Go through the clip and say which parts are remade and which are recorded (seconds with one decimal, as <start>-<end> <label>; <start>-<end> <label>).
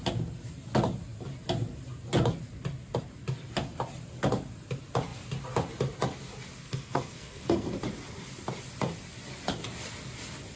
0.0-6.6 recorded; 6.6-7.8 remade; 7.8-10.6 recorded